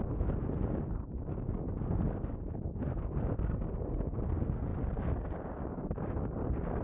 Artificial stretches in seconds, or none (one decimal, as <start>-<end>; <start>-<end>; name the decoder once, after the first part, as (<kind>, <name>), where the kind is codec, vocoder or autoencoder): none